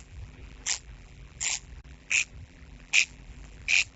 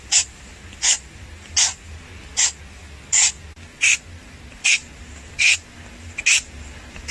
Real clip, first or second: second